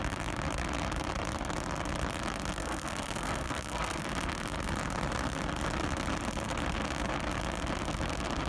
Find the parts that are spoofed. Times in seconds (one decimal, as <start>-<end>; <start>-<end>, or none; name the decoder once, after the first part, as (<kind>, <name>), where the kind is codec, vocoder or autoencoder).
2.6-4.0 (codec, SNAC)